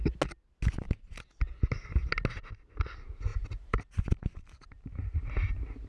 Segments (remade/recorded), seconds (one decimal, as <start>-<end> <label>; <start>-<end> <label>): 0.0-3.3 recorded; 3.3-5.3 remade; 5.3-5.9 recorded